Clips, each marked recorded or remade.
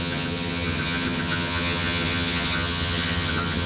remade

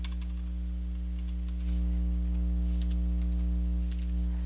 recorded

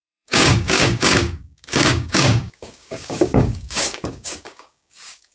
remade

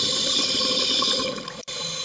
recorded